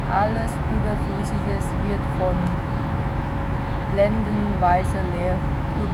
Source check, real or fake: fake